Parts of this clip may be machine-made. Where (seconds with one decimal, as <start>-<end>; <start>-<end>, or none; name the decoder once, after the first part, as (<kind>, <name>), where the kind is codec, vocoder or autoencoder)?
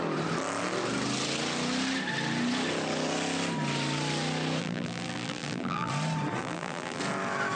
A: 4.6-5.9 (vocoder, BigVGAN v2); 6.4-7.0